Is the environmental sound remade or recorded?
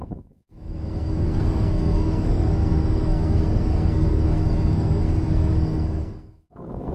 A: remade